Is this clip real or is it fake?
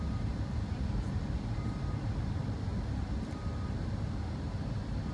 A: real